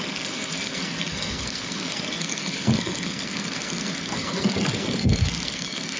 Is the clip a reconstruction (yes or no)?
yes